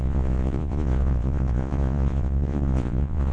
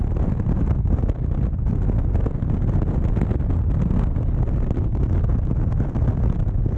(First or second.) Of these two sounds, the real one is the second